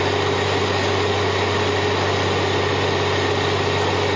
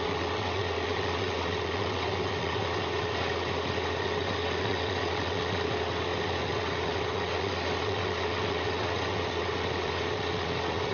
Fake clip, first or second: second